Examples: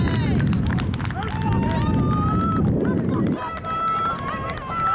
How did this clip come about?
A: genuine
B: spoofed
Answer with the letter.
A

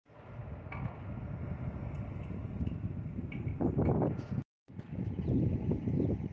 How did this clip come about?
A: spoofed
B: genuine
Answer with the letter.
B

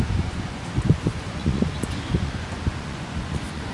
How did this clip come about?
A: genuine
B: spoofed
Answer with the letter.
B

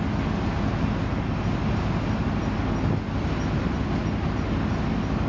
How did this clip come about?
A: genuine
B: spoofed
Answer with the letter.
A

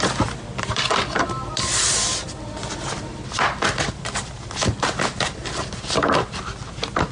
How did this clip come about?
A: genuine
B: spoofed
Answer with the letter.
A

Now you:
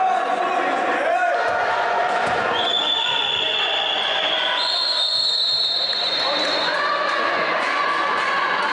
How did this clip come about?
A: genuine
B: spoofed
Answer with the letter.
B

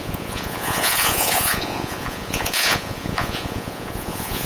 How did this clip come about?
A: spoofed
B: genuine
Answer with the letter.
A